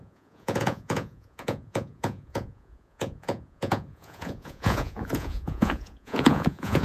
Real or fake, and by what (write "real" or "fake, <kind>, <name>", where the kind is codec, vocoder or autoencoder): fake, vocoder, Vocos